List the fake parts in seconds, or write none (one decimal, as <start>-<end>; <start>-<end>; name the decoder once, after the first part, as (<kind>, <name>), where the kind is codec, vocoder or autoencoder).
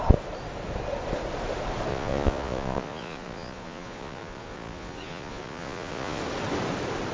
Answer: 1.9-6.2 (vocoder, Vocos)